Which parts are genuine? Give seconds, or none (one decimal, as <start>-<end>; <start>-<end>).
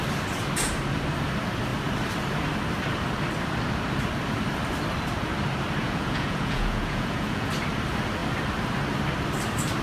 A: 0.0-5.8; 7.5-9.8